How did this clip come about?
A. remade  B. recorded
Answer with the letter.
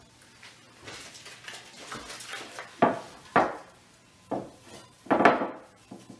B